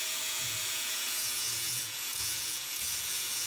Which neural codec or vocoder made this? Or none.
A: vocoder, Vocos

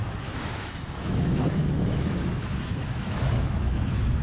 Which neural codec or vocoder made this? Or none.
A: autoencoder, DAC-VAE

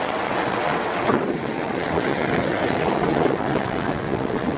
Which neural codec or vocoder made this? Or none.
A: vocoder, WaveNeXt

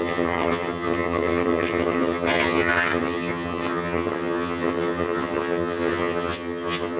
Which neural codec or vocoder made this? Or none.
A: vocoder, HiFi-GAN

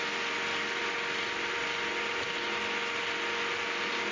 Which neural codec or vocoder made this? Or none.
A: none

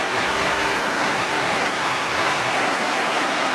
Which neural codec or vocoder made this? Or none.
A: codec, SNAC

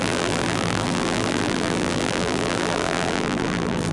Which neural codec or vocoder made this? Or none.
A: vocoder, BigVGAN v2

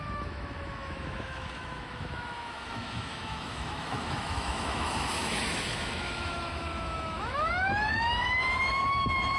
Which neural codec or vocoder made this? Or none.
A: autoencoder, DAC-VAE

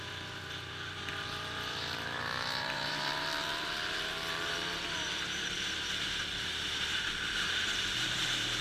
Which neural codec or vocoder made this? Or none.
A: vocoder, BigVGAN v2